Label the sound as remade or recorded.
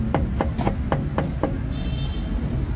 recorded